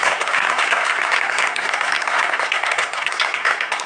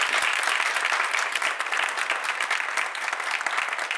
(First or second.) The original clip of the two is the second